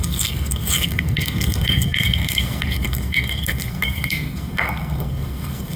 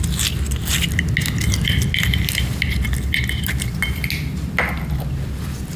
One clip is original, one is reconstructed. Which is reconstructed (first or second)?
first